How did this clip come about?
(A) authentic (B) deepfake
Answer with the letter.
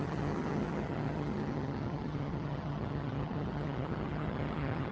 B